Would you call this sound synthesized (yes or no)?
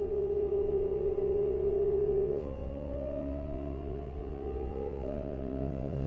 yes